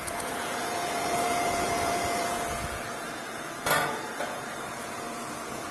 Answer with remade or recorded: remade